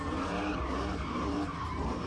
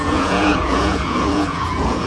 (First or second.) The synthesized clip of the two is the second